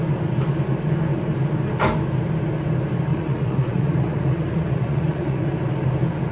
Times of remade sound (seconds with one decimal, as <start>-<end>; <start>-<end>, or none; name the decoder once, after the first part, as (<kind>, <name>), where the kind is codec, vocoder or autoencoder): 3.1-5.5 (vocoder, Vocos)